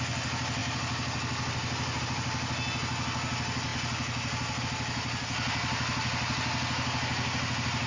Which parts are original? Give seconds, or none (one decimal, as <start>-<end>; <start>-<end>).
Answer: 0.0-7.9